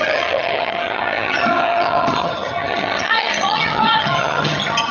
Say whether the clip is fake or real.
fake